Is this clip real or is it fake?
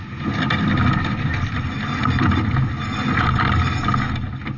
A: real